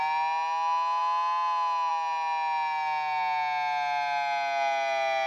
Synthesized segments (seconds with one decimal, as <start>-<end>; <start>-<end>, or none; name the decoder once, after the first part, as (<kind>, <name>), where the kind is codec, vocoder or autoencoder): none